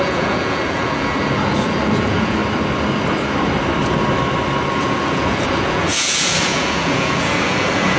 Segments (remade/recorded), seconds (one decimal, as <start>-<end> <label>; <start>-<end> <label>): 0.0-2.4 remade; 2.4-4.7 recorded; 4.7-8.0 remade